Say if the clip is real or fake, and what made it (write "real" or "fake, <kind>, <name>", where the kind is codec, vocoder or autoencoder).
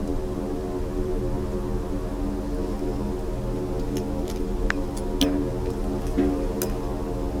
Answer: real